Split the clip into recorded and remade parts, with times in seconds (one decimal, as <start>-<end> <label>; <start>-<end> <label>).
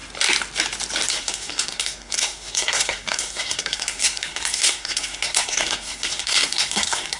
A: 0.0-1.1 recorded; 1.1-7.2 remade